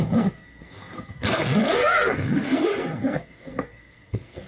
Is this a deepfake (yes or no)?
yes